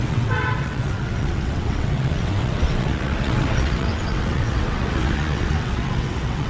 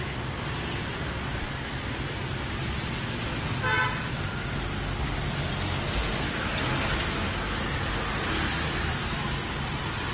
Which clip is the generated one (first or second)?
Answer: first